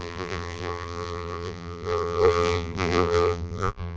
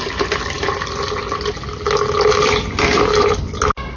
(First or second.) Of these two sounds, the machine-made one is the first